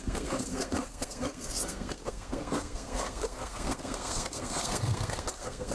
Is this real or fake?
fake